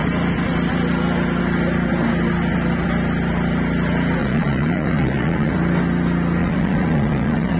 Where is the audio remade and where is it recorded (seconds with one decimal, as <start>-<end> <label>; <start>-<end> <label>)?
0.0-4.2 recorded; 4.2-5.5 remade; 5.5-6.4 recorded; 6.4-7.6 remade